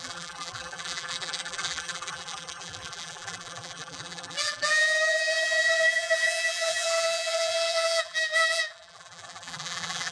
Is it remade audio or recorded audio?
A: remade